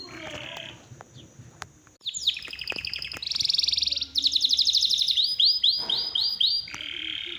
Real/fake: real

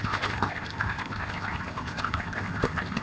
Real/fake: fake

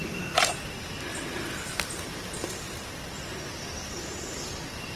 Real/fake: real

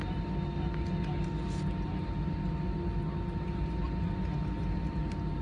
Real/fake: real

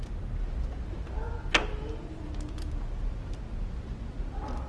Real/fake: real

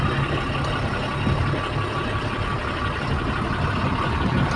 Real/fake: real